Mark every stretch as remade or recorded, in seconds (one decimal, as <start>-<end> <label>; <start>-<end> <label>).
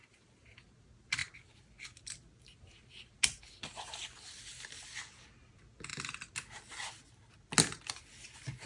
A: 0.0-8.7 recorded